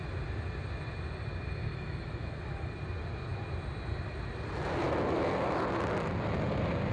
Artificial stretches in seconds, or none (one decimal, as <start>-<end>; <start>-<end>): 1.7-2.7